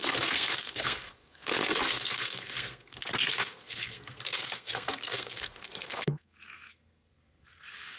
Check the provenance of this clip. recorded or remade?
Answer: remade